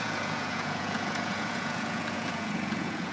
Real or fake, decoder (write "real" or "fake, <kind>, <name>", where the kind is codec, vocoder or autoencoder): fake, vocoder, Vocos